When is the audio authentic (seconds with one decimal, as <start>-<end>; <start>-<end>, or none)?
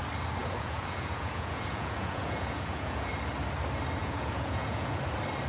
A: 0.0-0.4; 3.1-4.0; 5.0-5.5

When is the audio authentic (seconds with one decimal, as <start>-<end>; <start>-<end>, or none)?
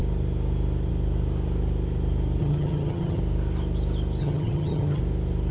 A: 0.0-2.4; 3.2-4.2; 5.0-5.5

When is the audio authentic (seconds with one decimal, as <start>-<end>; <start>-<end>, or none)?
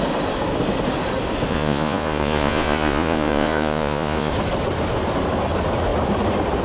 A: 0.0-1.5; 4.3-6.6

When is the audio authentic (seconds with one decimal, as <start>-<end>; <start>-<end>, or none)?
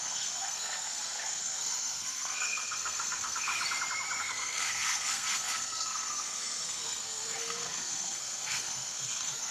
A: 3.5-4.2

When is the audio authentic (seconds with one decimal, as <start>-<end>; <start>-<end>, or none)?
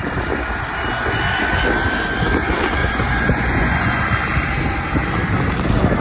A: 0.0-2.8; 4.0-6.0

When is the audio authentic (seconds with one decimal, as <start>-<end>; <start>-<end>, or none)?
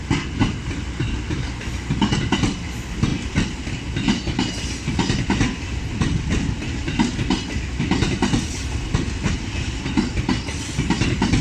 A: 0.0-11.4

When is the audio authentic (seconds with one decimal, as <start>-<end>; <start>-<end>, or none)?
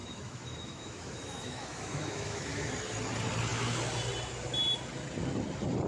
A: 2.7-5.9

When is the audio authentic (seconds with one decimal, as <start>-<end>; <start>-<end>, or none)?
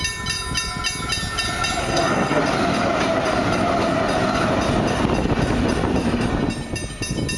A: 0.0-1.8; 2.4-7.4